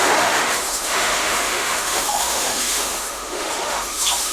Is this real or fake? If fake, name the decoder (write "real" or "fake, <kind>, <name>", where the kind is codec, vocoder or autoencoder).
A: fake, autoencoder, DAC-VAE